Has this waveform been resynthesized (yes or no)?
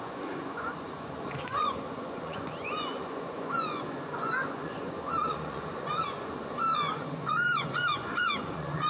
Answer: yes